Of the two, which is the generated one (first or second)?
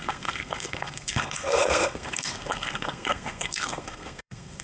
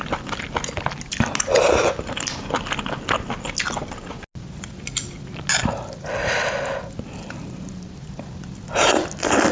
first